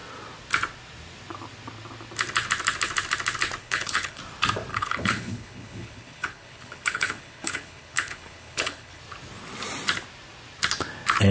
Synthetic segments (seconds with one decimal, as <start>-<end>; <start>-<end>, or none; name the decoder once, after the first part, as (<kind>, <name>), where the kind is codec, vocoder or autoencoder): 3.6-4.2 (codec, HILCodec); 4.7-9.0